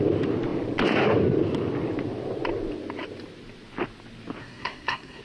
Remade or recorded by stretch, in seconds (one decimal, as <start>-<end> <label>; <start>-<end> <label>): 0.0-4.4 recorded; 4.4-5.2 remade

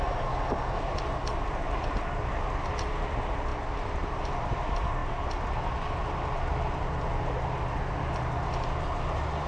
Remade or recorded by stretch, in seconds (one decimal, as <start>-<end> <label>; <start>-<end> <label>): 0.0-9.5 recorded

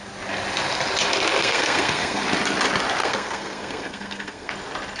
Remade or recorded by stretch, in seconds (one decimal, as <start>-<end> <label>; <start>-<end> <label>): 0.0-1.4 recorded; 1.4-2.2 remade; 2.2-3.0 recorded; 3.0-4.5 remade; 4.5-5.0 recorded

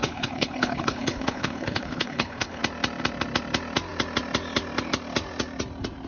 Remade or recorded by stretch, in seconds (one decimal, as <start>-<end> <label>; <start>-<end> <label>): 0.0-2.6 remade; 2.6-6.1 recorded

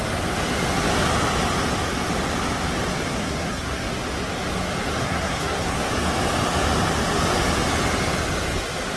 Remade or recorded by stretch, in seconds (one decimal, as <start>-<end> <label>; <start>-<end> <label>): 0.0-3.1 recorded; 3.1-3.9 remade; 3.9-5.0 recorded; 5.0-5.9 remade; 5.9-9.0 recorded